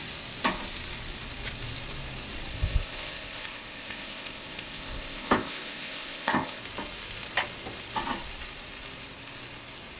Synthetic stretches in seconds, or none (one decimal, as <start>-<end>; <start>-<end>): 2.5-6.6